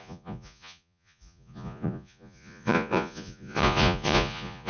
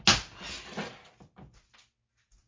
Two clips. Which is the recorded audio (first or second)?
second